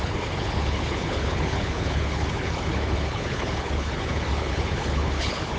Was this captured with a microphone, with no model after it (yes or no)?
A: no